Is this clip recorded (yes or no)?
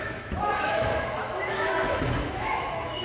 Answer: no